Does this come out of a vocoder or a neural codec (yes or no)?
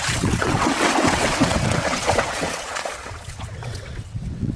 yes